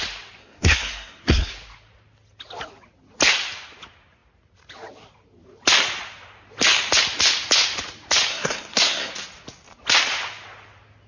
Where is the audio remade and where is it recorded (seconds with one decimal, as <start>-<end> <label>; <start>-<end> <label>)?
0.0-0.4 recorded; 0.4-1.5 remade; 1.5-8.3 recorded; 8.3-9.1 remade; 9.1-11.1 recorded